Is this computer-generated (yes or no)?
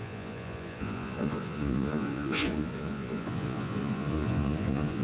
yes